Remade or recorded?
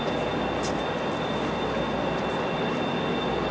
recorded